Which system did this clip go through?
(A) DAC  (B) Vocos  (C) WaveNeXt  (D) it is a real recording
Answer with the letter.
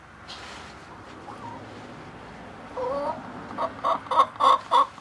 D